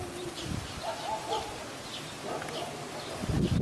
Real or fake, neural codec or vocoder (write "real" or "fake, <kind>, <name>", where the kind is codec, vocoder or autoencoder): real